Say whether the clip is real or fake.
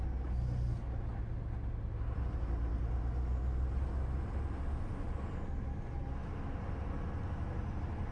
real